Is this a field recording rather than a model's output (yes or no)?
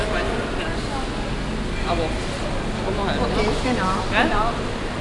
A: yes